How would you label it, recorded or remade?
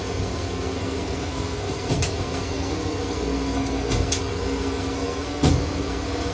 remade